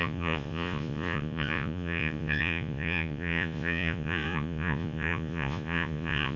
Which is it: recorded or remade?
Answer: remade